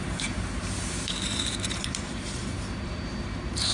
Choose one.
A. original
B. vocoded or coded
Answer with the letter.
B